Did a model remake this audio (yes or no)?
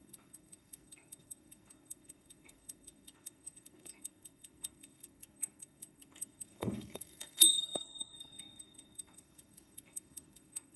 yes